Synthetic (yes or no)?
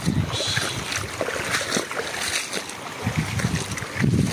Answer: no